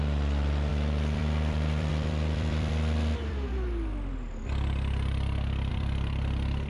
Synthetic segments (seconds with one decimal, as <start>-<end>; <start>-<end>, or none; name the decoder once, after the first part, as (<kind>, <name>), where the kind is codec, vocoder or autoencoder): 0.0-3.5 (vocoder, BigVGAN v2); 5.7-6.7